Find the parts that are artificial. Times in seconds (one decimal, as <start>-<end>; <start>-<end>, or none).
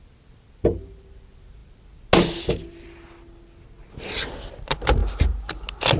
none